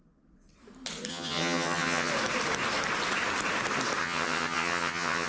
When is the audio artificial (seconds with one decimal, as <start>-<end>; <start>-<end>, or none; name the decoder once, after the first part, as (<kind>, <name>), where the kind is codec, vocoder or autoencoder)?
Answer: 1.1-2.1 (vocoder, HiFi-GAN); 4.0-5.3